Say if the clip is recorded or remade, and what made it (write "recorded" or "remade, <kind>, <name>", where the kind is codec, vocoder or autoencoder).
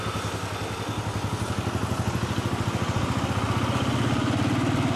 recorded